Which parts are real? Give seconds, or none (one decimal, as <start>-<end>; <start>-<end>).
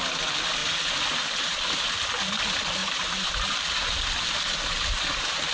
0.0-0.6; 1.9-2.8; 3.3-5.5